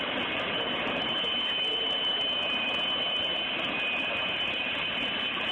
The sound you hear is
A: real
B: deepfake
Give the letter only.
B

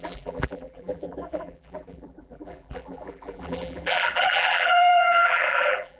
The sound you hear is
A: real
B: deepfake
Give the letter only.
B